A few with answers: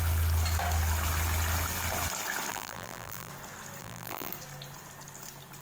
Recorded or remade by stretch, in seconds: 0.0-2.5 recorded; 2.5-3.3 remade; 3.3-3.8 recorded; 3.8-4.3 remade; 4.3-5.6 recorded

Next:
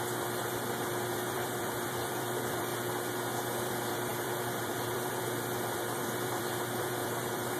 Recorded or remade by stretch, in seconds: 0.0-2.7 remade; 2.7-3.6 recorded; 3.6-7.6 remade